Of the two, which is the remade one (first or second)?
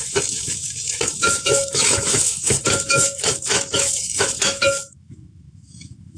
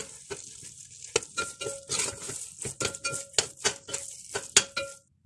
first